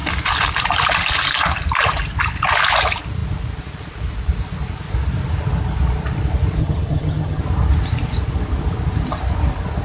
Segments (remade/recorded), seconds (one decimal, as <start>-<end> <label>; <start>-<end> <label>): 0.0-6.6 recorded; 6.6-7.4 remade; 7.4-9.8 recorded